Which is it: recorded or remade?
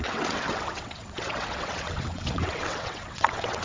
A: remade